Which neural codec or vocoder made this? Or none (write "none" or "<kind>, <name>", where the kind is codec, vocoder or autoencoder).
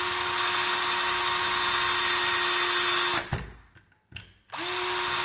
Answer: none